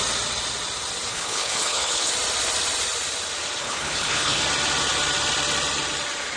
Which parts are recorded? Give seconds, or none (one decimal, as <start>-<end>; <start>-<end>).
0.0-1.1; 2.1-3.6; 4.4-6.4